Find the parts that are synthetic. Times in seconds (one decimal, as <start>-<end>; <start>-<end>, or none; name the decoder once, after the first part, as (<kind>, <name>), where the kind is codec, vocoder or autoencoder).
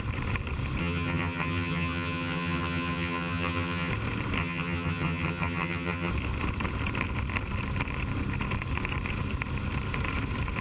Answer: 0.8-3.9 (vocoder, HiFi-GAN); 4.4-6.1